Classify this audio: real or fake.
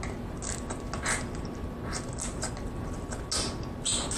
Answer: real